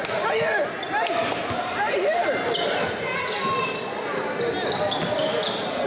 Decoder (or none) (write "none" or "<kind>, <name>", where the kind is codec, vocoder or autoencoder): none